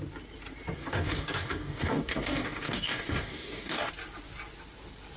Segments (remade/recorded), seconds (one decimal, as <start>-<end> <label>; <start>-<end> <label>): 0.0-0.8 recorded; 0.8-3.9 remade; 3.9-5.2 recorded